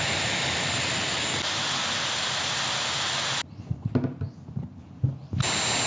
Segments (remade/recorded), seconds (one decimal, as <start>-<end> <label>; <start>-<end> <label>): 0.0-5.9 recorded